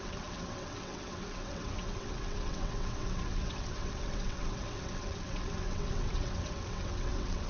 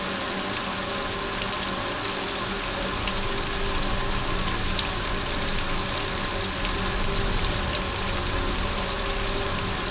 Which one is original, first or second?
second